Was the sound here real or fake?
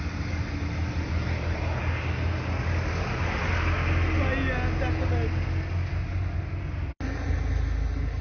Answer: real